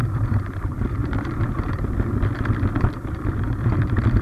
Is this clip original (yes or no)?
no